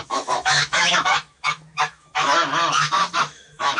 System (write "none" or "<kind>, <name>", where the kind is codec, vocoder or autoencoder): autoencoder, DAC-VAE